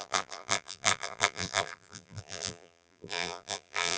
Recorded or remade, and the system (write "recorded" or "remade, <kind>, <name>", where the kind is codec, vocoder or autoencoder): remade, vocoder, BigVGAN v2